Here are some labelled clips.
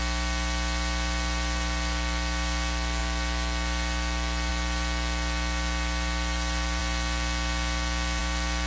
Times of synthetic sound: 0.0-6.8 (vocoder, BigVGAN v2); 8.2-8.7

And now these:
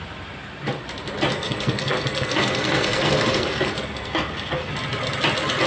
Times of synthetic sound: 1.3-4.7 (codec, SNAC)

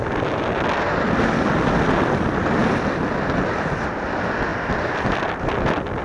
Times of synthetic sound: none

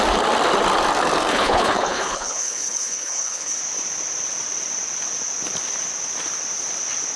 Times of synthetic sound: 1.3-3.6 (codec, HILCodec)

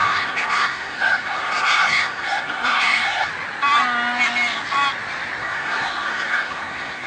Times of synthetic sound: 0.0-3.3 (codec, SNAC); 5.4-7.1